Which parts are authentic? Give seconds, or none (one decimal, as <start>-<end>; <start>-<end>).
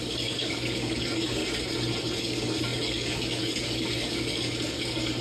1.4-2.2